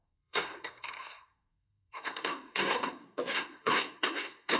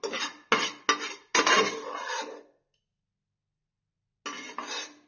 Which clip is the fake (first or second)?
first